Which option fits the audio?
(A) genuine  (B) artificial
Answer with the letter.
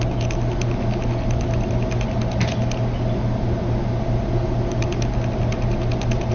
A